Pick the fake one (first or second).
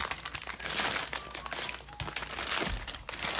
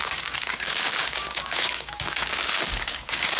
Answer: second